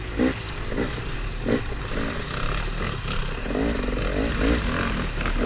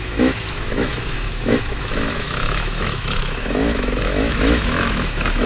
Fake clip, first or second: second